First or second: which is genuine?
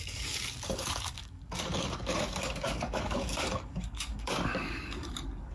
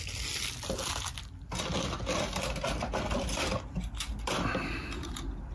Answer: second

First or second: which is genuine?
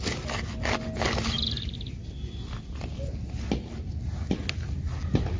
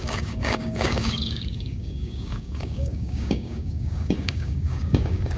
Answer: first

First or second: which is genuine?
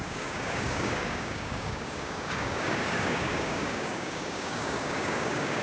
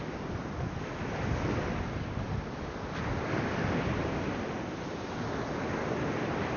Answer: second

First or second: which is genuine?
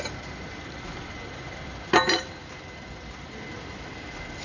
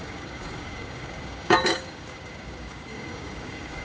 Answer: first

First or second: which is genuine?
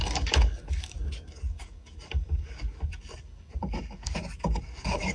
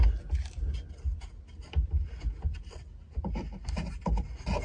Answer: second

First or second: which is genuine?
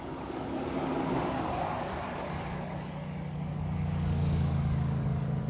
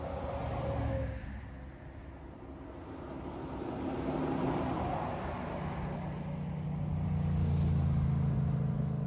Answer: second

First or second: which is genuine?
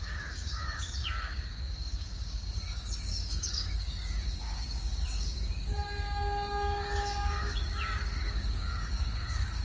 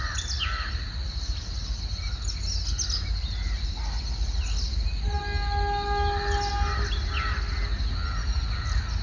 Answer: second